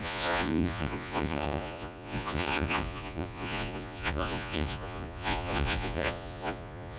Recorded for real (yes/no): no